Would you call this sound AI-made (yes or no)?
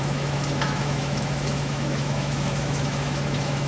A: yes